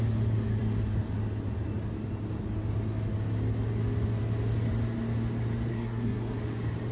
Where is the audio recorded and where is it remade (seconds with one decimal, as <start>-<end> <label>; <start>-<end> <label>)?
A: 0.0-5.7 recorded; 5.7-6.4 remade; 6.4-6.9 recorded